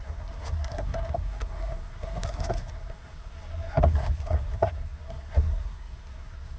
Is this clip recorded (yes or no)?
no